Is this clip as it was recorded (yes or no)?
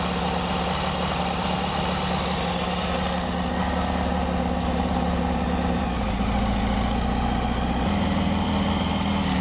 yes